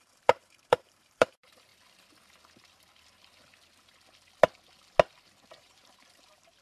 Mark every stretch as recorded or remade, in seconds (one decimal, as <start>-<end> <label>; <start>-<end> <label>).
0.0-1.7 remade; 1.7-5.6 recorded; 5.6-6.6 remade